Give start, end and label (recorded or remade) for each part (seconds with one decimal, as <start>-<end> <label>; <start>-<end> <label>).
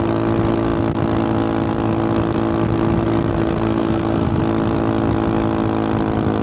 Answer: 0.0-3.3 recorded; 3.3-4.4 remade; 4.4-6.4 recorded